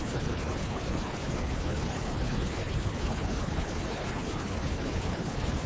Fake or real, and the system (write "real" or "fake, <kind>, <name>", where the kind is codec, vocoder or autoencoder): fake, codec, HILCodec